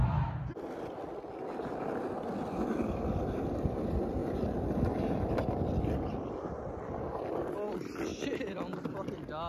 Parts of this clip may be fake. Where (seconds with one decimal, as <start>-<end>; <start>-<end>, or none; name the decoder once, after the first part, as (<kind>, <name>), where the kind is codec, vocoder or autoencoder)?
8.1-9.1 (vocoder, BigVGAN v2)